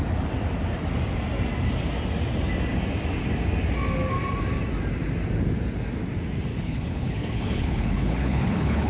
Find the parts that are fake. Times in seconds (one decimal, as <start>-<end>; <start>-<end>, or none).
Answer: 6.5-8.9